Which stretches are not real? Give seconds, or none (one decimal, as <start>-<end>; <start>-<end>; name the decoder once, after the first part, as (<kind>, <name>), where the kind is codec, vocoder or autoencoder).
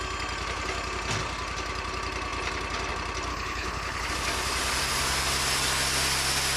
3.3-4.1 (codec, HILCodec)